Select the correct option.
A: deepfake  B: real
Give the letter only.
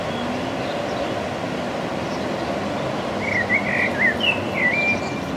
B